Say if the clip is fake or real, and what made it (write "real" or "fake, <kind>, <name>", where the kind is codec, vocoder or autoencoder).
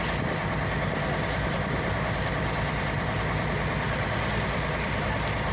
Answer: real